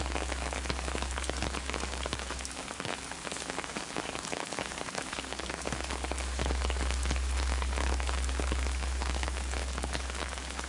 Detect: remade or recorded remade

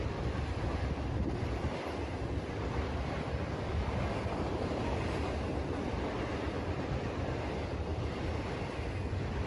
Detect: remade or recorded remade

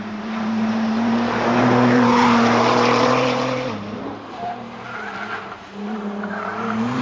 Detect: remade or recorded remade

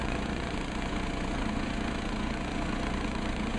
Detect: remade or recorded remade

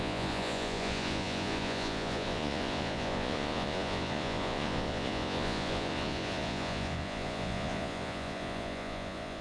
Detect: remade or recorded remade